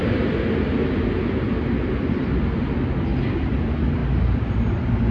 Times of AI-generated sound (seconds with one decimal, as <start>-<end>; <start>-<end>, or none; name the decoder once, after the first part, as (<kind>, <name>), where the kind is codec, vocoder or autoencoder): none